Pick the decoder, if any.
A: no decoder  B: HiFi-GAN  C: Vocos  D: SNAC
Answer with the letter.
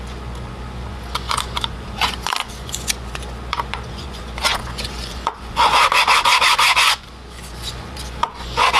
C